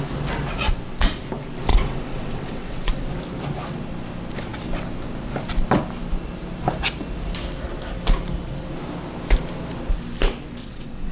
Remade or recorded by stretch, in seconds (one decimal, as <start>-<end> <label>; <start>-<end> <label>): 0.0-1.7 recorded; 1.7-3.1 remade; 3.1-10.6 recorded; 10.6-11.1 remade